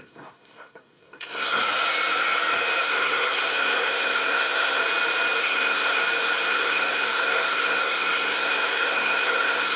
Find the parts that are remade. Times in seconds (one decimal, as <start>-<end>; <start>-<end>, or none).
0.0-1.6; 2.8-4.8; 5.4-6.0; 6.5-9.8